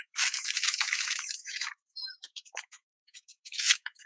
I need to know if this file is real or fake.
fake